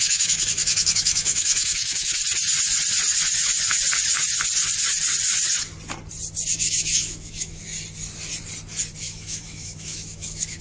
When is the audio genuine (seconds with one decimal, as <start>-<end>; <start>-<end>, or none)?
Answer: 2.2-6.5; 7.6-9.0